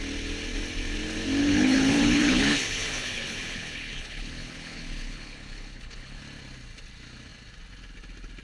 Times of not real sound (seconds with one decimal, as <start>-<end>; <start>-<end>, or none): 1.4-6.2